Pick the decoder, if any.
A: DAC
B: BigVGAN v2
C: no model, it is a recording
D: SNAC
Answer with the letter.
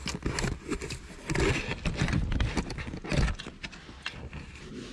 C